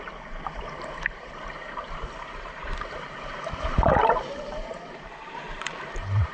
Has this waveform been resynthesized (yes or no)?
yes